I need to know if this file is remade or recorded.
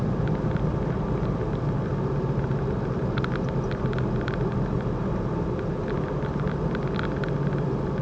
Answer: recorded